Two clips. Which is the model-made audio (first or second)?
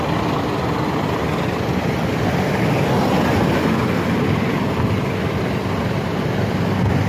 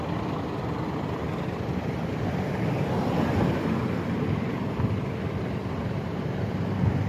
second